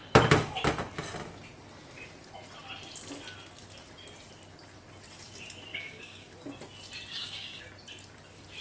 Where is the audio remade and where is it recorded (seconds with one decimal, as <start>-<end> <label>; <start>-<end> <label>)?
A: 0.0-5.7 recorded; 5.7-6.3 remade; 6.3-7.1 recorded; 7.1-7.6 remade; 7.6-8.6 recorded